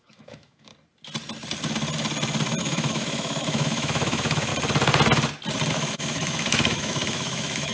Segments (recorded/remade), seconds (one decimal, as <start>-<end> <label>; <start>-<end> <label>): 0.0-0.7 remade; 0.7-2.6 recorded; 2.6-4.5 remade; 4.5-5.7 recorded; 5.7-7.7 remade